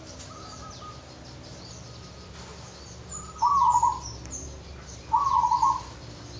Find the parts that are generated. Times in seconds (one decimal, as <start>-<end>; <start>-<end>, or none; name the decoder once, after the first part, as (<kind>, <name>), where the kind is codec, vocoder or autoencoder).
none